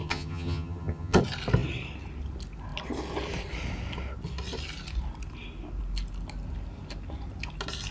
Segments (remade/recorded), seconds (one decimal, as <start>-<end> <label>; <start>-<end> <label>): 0.0-1.2 remade; 1.2-7.9 recorded